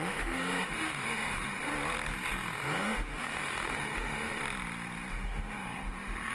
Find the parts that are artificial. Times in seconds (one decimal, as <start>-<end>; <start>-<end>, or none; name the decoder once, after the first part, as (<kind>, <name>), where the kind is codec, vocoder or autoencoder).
0.0-1.7 (autoencoder, DAC-VAE); 2.3-4.4; 5.1-6.3